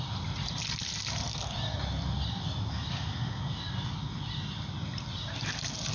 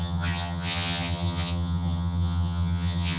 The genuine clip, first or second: first